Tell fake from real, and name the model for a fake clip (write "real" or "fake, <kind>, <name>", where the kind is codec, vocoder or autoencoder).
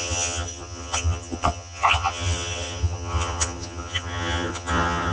fake, vocoder, HiFi-GAN